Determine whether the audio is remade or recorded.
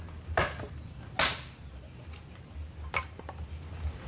recorded